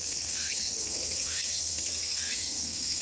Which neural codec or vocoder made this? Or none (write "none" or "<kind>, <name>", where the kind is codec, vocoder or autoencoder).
codec, SNAC